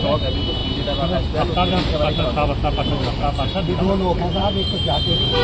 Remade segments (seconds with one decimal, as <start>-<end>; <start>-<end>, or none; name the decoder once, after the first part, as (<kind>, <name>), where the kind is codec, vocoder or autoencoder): none